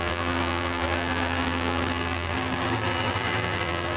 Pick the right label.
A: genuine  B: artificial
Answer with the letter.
B